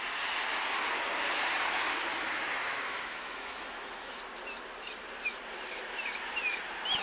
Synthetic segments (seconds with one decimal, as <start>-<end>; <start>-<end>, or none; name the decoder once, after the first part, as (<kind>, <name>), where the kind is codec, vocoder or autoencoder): 2.1-4.2 (autoencoder, DAC-VAE)